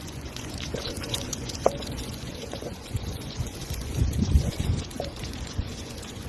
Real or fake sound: fake